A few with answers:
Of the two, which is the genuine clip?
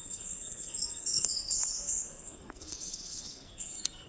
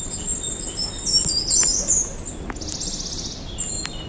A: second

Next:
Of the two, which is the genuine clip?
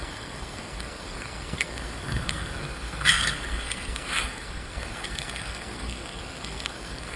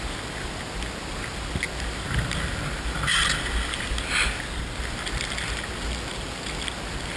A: second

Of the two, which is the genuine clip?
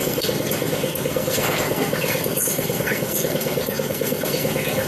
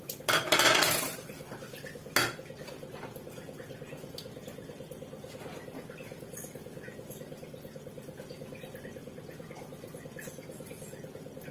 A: second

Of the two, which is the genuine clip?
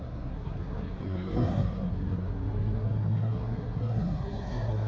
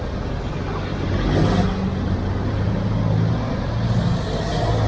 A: second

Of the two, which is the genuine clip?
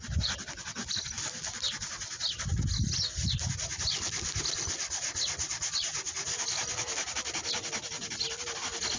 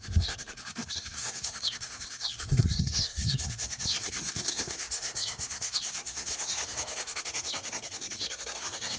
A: first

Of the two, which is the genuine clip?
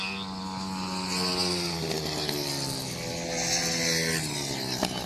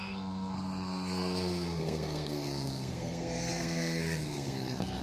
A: first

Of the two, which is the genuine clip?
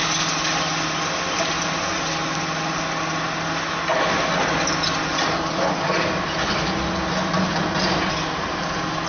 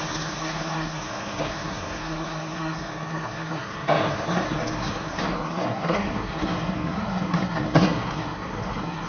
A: first